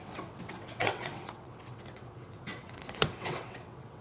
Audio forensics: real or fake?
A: fake